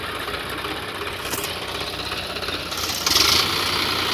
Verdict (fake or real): real